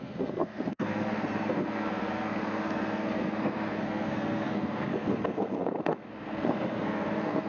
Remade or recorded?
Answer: remade